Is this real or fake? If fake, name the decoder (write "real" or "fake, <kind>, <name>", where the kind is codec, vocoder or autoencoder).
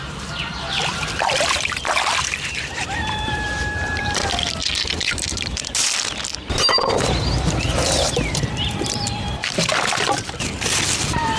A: fake, vocoder, BigVGAN v2